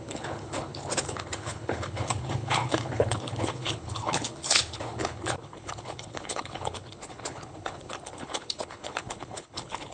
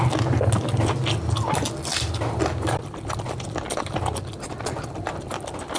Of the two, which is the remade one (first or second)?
first